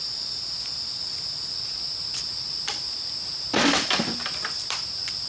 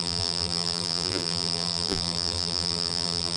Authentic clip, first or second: first